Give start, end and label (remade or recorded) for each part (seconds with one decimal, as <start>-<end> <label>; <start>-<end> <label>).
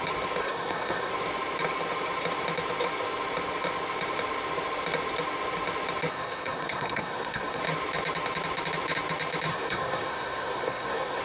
0.0-0.4 recorded; 0.4-1.1 remade; 1.1-6.1 recorded; 6.1-7.6 remade; 7.6-9.5 recorded; 9.5-11.2 remade